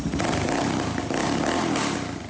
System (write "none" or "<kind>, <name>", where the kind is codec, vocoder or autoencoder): none